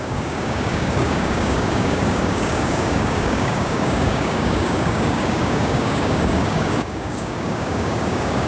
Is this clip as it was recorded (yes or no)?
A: no